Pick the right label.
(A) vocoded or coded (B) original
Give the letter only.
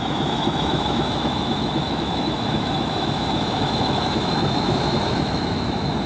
A